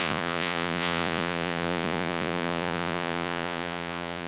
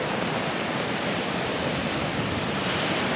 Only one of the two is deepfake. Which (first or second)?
first